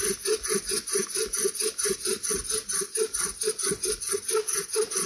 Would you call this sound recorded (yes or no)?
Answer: yes